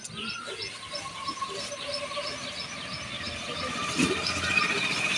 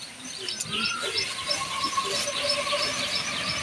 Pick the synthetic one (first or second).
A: second